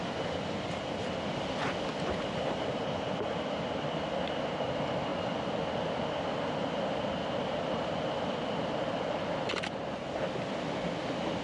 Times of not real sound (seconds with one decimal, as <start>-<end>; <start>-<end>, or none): none